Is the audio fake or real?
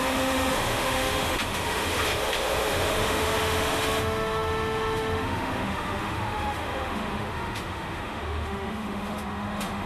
fake